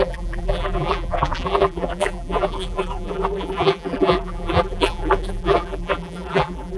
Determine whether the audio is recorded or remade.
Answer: remade